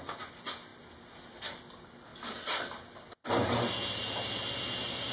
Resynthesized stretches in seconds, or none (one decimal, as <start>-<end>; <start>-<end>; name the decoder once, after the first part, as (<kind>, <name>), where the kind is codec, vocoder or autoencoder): none